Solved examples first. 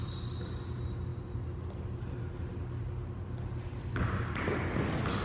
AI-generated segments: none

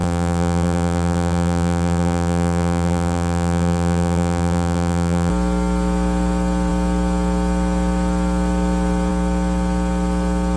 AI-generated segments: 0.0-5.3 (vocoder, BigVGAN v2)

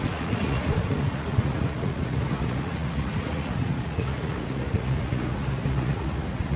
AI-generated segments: 0.0-6.6 (vocoder, Vocos)

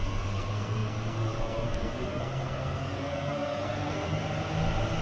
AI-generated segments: 0.0-4.2 (codec, SNAC)